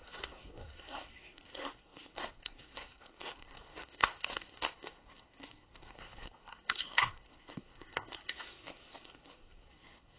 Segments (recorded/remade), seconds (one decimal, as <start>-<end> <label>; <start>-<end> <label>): 0.0-10.2 remade